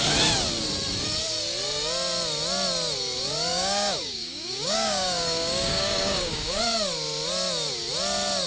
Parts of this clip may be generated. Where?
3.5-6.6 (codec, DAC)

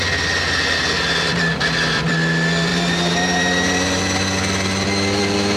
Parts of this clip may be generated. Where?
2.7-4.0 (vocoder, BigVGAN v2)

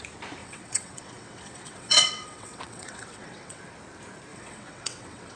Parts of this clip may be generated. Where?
0.4-3.6 (vocoder, WaveNeXt); 4.3-5.4